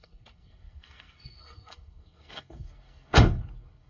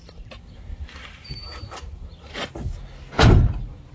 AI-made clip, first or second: first